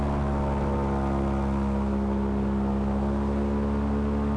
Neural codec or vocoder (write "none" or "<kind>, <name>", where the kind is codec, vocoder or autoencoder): none